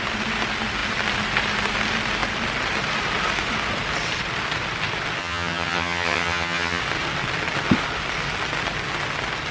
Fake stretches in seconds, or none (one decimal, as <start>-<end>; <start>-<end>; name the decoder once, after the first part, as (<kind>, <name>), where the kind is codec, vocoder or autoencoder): 5.2-6.8 (vocoder, HiFi-GAN)